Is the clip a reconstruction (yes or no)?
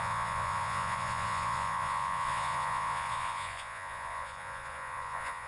yes